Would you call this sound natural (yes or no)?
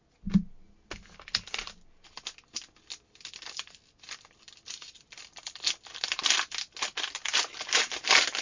yes